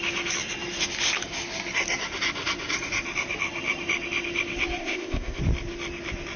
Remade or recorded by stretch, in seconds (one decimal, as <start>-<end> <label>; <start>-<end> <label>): 0.0-4.8 recorded; 4.8-5.4 remade; 5.4-6.4 recorded